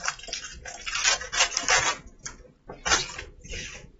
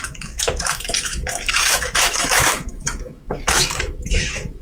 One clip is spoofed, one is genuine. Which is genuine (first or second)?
first